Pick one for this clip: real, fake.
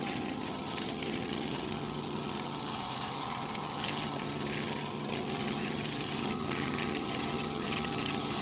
fake